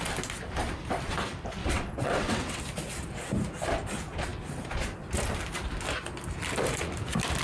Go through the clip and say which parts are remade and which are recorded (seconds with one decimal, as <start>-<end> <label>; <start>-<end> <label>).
0.0-1.6 recorded; 1.6-2.6 remade; 2.6-7.4 recorded